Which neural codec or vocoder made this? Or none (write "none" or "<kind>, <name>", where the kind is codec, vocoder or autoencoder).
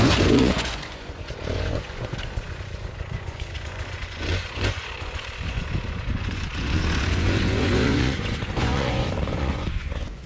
vocoder, Vocos